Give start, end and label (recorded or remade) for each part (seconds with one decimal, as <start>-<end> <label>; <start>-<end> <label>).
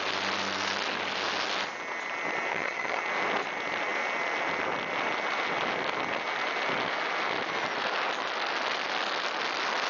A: 0.0-2.5 recorded; 2.5-3.0 remade; 3.0-9.9 recorded